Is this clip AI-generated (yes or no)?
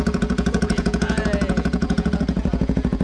yes